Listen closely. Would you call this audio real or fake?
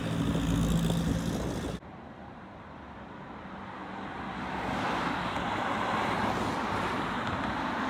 real